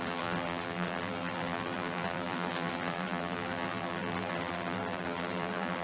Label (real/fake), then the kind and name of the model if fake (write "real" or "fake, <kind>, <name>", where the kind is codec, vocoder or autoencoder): fake, vocoder, BigVGAN v2